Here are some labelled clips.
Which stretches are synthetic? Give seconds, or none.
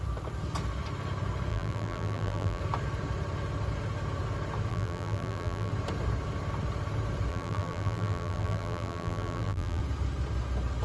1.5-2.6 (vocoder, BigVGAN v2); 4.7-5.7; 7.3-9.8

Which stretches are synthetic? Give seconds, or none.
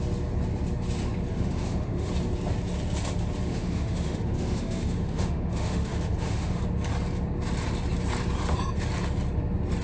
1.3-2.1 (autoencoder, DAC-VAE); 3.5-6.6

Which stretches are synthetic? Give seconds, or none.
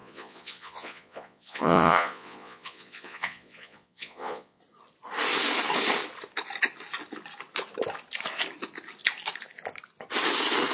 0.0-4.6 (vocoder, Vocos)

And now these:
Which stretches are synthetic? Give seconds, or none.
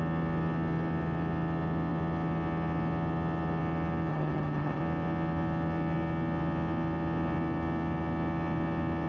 4.1-4.8 (vocoder, HiFi-GAN)